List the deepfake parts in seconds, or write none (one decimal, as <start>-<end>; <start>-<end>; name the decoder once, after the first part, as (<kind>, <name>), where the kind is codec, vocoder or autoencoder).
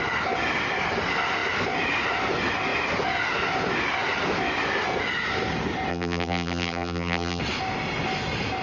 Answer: 5.9-7.4 (vocoder, BigVGAN v2)